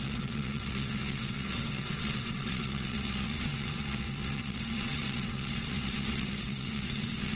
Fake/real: fake